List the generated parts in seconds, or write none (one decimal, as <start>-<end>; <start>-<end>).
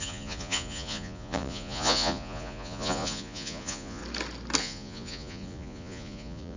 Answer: 0.0-4.0; 4.6-6.6